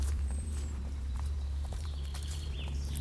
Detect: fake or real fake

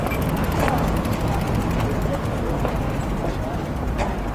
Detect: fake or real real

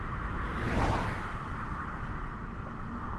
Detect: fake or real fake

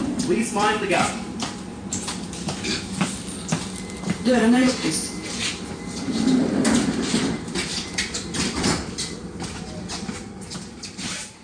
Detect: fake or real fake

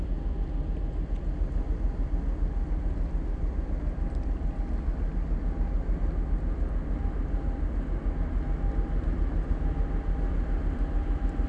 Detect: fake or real real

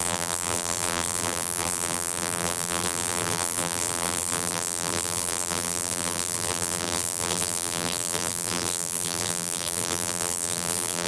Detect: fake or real fake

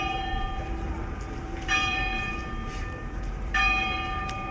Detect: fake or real fake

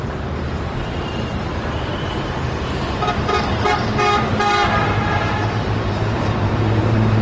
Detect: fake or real fake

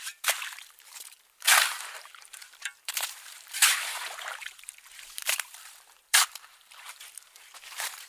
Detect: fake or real fake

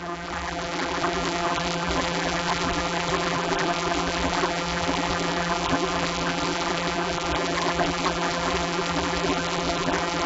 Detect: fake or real fake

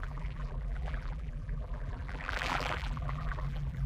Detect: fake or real fake